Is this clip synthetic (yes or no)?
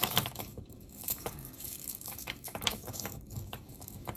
yes